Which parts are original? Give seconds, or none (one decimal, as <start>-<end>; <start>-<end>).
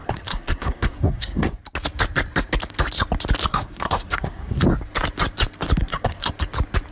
1.6-3.5; 4.6-5.8; 6.3-6.9